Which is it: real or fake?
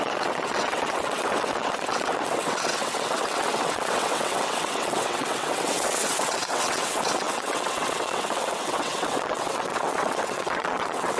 fake